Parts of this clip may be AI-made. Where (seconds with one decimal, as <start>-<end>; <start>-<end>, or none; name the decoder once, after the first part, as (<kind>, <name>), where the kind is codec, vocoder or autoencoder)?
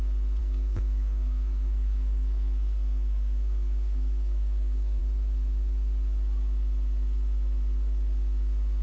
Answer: 0.4-5.0 (codec, SNAC)